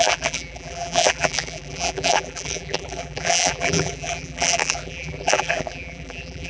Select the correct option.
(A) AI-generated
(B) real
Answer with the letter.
A